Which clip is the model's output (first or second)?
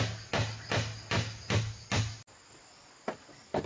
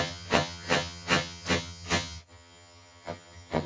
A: second